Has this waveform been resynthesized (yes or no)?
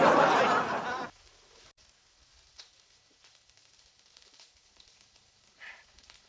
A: no